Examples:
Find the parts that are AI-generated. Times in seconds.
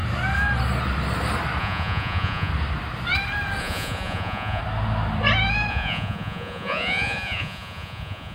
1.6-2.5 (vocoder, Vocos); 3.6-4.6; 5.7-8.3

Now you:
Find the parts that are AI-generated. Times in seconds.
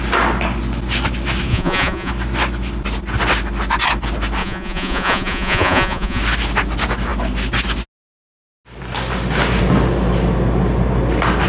1.5-2.1 (vocoder, Vocos); 4.4-6.2